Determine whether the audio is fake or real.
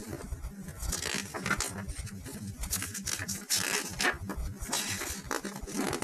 real